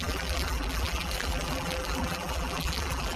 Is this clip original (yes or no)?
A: no